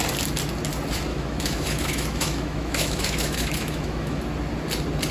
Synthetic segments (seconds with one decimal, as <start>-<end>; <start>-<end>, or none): 1.1-4.2